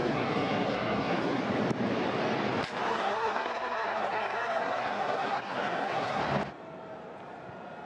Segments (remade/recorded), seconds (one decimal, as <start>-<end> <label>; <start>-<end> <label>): 0.0-1.4 remade; 1.4-2.9 recorded; 2.9-6.2 remade; 6.2-7.9 recorded